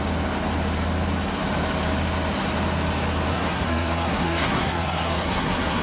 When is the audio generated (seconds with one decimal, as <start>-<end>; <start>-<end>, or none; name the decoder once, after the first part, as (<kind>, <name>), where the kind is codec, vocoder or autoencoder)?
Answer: 3.3-5.8 (codec, SNAC)